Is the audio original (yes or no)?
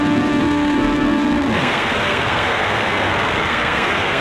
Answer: no